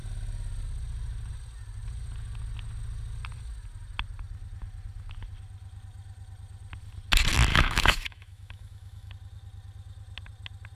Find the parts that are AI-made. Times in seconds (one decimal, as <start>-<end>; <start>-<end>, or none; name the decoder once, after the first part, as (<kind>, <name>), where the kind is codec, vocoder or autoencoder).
7.5-9.1 (autoencoder, DAC-VAE)

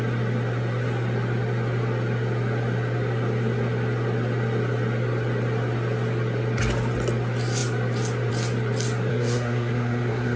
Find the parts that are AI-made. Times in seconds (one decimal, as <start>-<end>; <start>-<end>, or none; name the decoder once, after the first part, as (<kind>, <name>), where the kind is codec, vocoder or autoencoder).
9.1-10.4 (codec, SNAC)